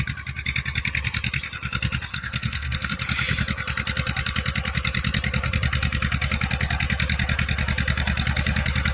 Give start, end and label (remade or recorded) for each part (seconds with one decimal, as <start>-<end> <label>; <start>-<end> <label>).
0.0-2.1 recorded; 2.1-2.9 remade; 2.9-8.9 recorded